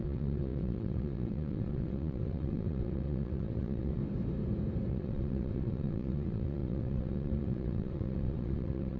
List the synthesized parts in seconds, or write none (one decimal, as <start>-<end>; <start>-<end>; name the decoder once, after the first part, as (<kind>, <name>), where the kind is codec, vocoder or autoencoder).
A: 0.0-4.0 (vocoder, WaveNeXt); 4.9-9.0